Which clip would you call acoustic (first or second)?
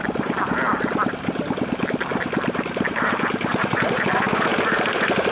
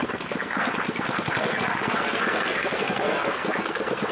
first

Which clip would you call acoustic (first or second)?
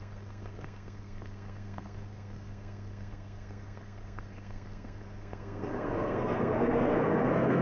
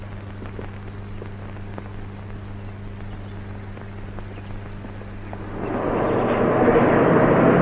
second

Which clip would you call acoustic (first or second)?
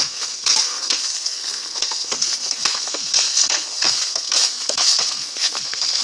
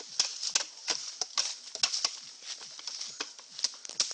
second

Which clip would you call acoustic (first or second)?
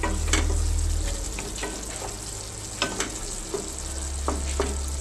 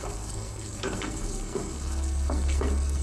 first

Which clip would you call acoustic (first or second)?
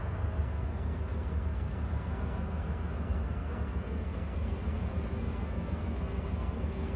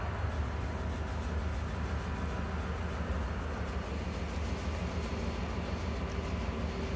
second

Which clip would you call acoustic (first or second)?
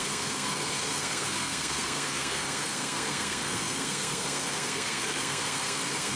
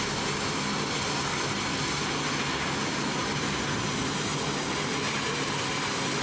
second